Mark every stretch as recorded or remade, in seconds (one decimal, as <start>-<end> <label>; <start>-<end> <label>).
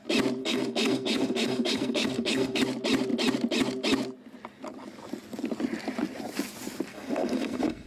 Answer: 0.0-0.4 recorded; 0.4-2.6 remade; 2.6-6.9 recorded; 6.9-7.9 remade